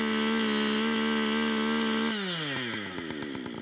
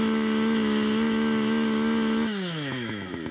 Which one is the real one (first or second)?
first